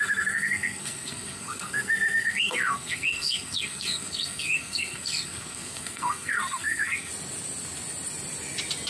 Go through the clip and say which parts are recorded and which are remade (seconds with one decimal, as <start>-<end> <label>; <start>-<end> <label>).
0.0-7.1 remade; 7.1-8.9 recorded